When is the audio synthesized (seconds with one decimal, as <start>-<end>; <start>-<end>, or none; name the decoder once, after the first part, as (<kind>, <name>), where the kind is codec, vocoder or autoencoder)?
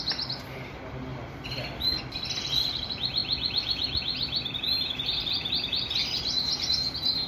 none